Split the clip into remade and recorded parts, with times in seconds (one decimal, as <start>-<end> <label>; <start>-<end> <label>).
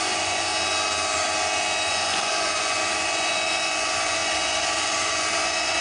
0.0-0.5 remade; 0.5-1.9 recorded; 1.9-5.8 remade